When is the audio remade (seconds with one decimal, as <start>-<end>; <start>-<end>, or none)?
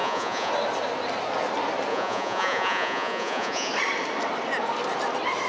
0.0-0.5; 1.9-3.7